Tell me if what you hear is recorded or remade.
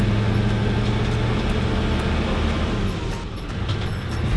recorded